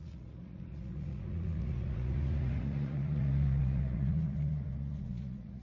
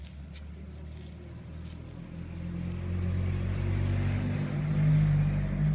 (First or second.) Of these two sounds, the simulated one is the first